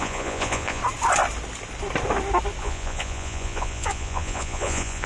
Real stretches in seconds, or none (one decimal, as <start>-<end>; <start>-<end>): 0.8-2.6